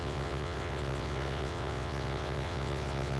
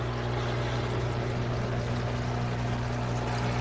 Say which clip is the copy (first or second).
first